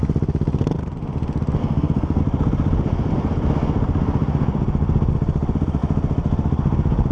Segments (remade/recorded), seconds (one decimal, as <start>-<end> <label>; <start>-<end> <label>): 0.0-1.6 recorded; 1.6-2.2 remade; 2.2-7.1 recorded